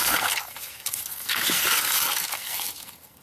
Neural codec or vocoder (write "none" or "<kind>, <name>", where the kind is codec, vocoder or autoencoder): codec, SNAC